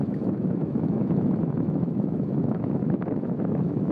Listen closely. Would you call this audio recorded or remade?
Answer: remade